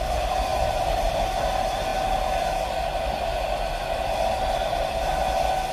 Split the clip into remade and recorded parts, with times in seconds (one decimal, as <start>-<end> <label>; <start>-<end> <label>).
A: 0.0-5.7 recorded

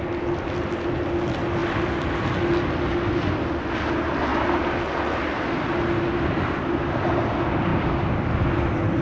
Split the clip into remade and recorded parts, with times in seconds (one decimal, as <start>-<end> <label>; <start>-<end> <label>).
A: 0.0-9.0 recorded

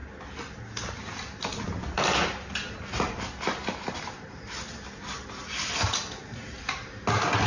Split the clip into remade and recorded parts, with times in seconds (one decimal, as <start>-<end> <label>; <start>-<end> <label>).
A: 0.0-7.5 recorded

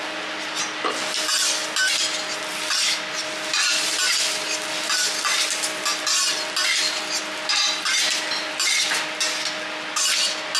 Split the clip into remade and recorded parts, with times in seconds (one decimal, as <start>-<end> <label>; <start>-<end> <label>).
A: 0.0-10.6 recorded

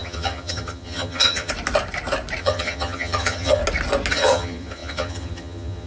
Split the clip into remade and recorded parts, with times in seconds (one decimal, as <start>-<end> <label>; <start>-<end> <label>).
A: 0.0-1.5 remade; 1.5-2.4 recorded; 2.4-3.6 remade; 3.6-4.1 recorded; 4.1-5.9 remade

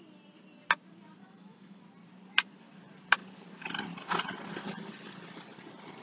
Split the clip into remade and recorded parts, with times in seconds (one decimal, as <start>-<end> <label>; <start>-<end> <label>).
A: 0.0-1.2 recorded; 1.2-1.8 remade; 1.8-6.0 recorded